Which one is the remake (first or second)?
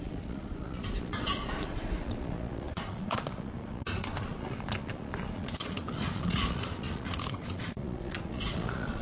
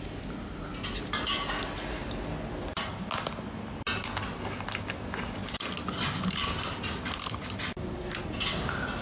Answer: first